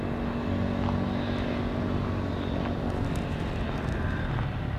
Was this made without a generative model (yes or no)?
yes